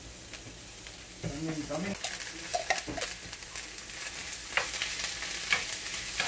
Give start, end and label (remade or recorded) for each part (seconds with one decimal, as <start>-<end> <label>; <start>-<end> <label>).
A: 0.0-6.3 recorded